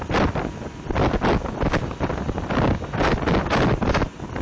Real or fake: real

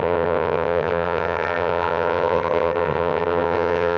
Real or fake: fake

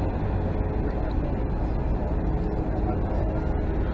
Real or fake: real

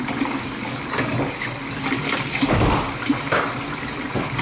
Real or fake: real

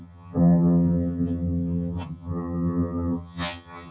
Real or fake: fake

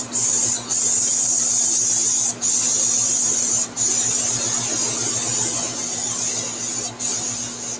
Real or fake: real